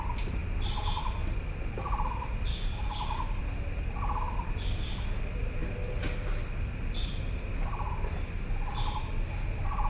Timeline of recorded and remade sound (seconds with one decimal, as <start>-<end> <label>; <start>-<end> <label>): 0.0-2.5 recorded; 2.5-3.4 remade; 3.4-9.9 recorded